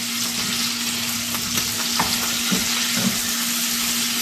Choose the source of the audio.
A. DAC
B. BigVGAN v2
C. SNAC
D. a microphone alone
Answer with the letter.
D